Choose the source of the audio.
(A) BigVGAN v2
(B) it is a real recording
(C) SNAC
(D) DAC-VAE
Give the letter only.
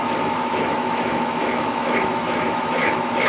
D